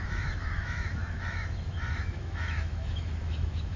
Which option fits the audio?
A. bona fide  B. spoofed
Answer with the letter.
B